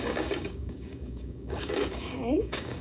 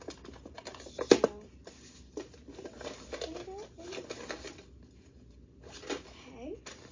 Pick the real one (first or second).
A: second